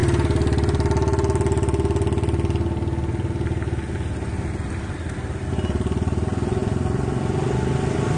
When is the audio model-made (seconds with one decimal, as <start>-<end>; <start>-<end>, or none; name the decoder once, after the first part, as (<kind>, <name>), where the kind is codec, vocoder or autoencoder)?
none